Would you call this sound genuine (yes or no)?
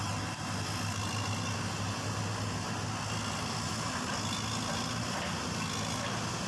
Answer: yes